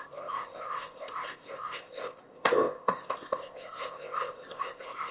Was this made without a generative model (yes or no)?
no